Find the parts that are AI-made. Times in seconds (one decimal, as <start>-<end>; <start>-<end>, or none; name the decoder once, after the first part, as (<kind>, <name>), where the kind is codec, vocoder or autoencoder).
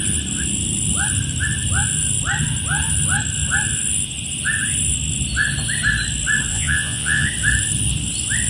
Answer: 6.5-7.3 (vocoder, Vocos)